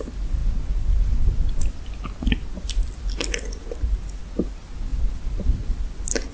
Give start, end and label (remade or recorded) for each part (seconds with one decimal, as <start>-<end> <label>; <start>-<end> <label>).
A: 0.0-6.3 recorded